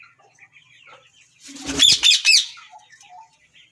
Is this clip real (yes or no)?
yes